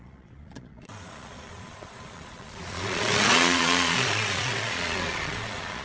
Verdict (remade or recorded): remade